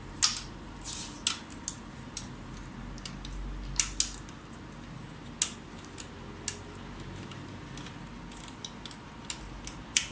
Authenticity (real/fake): real